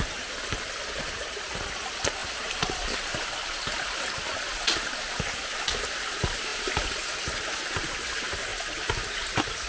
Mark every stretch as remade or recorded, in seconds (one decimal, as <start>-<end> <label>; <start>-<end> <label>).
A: 0.0-6.5 recorded; 6.5-7.3 remade; 7.3-9.7 recorded